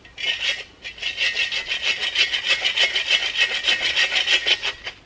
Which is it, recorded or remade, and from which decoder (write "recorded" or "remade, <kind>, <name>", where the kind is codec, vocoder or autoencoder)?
recorded